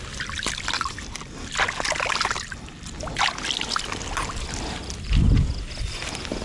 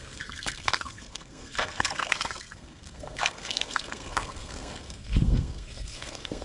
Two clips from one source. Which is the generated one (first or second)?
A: second